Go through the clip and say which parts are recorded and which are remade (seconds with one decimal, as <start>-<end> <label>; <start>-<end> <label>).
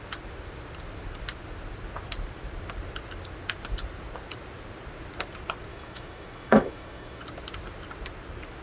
0.0-5.7 recorded; 5.7-7.2 remade; 7.2-8.6 recorded